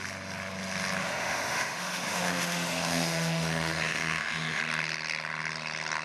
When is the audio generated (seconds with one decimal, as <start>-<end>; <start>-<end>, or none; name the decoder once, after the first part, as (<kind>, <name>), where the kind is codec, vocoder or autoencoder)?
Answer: 1.0-4.6 (autoencoder, DAC-VAE)